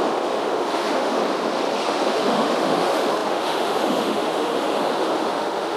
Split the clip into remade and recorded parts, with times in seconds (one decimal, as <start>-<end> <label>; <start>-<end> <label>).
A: 0.0-1.2 remade; 1.2-1.8 recorded; 1.8-5.8 remade